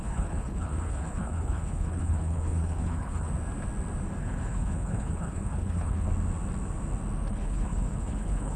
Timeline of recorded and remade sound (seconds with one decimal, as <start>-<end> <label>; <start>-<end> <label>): 0.0-3.3 remade; 3.3-4.2 recorded; 4.2-6.1 remade; 6.1-7.3 recorded; 7.3-8.6 remade